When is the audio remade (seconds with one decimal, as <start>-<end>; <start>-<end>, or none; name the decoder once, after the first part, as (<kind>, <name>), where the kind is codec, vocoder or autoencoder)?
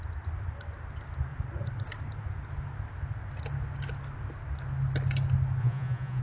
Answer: 5.6-6.2 (vocoder, Vocos)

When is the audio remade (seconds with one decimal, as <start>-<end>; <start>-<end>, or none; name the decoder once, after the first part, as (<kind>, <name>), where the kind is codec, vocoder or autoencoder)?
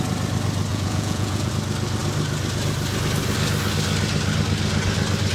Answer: 0.7-1.5 (vocoder, Vocos)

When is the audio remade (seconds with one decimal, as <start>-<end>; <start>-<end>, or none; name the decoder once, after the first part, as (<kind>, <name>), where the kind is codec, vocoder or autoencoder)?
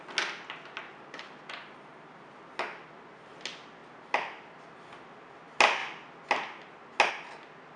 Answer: none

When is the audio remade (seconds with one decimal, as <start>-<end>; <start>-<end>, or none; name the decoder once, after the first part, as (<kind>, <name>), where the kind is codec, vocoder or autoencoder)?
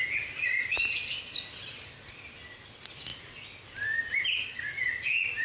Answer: none